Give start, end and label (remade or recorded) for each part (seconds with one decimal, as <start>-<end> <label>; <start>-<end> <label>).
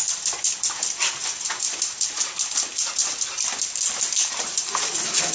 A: 0.0-5.3 recorded